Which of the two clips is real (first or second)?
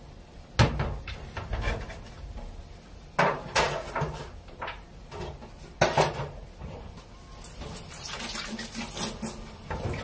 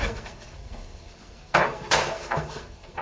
first